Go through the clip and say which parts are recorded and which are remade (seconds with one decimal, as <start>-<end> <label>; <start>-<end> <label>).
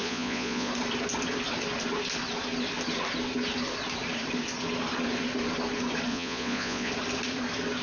0.0-0.7 remade; 0.7-6.1 recorded; 6.1-6.9 remade; 6.9-7.8 recorded